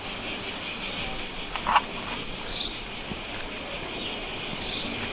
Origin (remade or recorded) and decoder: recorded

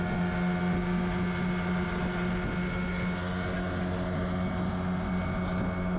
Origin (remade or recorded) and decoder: recorded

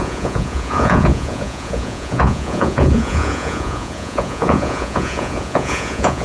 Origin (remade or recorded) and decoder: remade, vocoder, Vocos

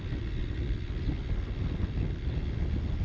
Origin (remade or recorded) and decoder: recorded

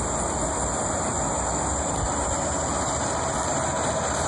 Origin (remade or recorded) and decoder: recorded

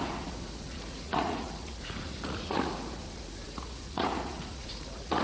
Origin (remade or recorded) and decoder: remade, vocoder, Vocos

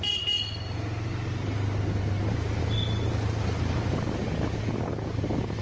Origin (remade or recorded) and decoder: recorded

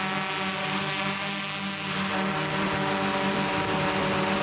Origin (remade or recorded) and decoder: recorded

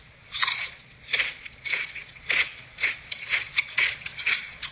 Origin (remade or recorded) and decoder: remade, vocoder, Vocos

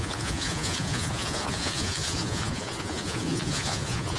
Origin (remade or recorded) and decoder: remade, vocoder, Vocos